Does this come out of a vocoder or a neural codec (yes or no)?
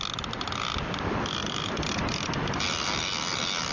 no